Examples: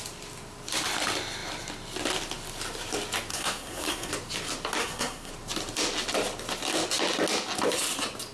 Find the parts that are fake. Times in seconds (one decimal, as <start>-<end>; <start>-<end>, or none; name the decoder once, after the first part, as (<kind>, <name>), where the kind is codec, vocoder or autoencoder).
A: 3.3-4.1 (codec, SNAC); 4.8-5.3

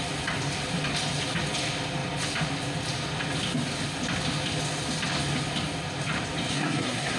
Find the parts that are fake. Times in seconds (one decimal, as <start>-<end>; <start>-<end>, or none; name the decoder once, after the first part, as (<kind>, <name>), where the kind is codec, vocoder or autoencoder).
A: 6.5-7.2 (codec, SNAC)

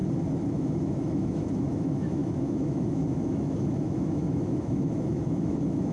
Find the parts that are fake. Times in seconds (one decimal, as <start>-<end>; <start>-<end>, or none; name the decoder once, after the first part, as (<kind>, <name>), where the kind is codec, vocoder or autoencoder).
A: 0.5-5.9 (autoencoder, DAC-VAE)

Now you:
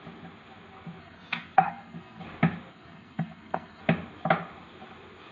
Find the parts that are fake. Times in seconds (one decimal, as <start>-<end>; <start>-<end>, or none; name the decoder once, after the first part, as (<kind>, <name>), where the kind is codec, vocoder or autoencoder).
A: 1.0-2.2 (codec, SNAC); 2.7-3.8